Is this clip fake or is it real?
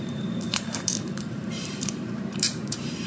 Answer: fake